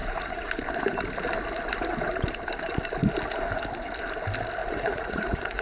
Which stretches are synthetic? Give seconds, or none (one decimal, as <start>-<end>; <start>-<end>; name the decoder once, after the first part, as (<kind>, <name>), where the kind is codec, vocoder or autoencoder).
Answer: 0.0-0.5 (vocoder, Vocos); 4.6-5.6